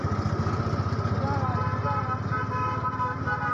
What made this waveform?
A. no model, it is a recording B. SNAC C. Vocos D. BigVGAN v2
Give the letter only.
A